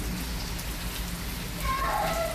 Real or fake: real